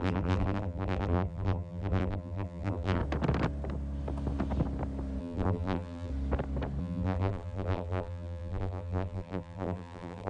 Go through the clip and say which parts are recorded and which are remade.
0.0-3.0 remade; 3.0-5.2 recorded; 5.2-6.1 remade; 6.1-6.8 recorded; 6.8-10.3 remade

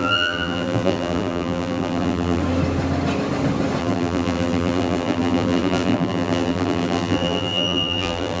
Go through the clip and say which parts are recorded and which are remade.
0.0-2.4 remade; 2.4-3.8 recorded; 3.8-8.4 remade